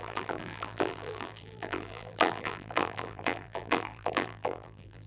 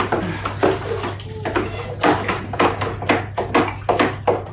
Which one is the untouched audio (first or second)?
second